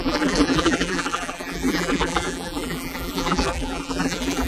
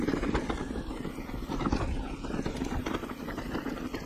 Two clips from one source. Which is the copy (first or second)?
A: first